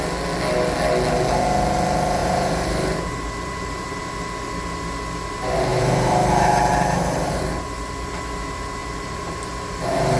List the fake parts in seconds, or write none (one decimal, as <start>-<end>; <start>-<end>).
2.2-4.0; 5.7-7.4; 8.8-9.5